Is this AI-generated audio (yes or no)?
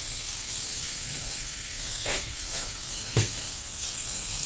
yes